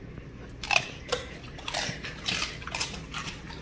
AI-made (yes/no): no